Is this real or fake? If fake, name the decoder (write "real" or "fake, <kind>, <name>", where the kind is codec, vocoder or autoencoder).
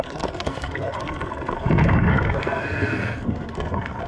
fake, codec, SNAC